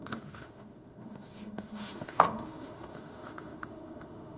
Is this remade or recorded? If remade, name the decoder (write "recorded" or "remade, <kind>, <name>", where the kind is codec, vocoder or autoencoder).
remade, autoencoder, DAC-VAE